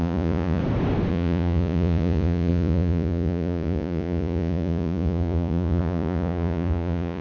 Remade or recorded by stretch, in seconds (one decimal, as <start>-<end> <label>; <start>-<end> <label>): 0.0-0.6 remade; 0.6-1.1 recorded; 1.1-7.2 remade